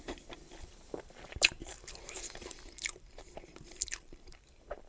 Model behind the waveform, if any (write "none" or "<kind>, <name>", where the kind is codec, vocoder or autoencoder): vocoder, BigVGAN v2